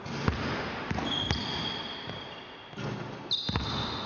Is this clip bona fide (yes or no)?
yes